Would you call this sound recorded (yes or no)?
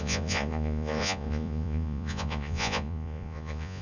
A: no